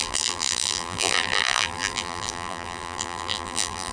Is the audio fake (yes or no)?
yes